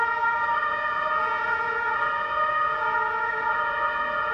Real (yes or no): no